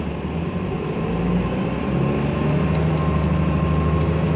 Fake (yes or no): no